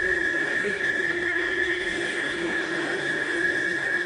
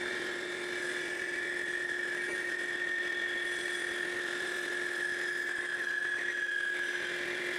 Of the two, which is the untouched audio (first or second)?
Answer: second